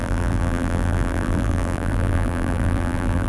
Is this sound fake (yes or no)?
yes